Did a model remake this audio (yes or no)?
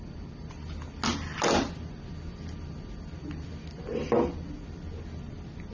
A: no